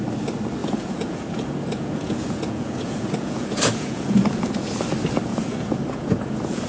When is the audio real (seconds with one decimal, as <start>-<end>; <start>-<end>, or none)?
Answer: 0.0-0.6; 4.6-5.3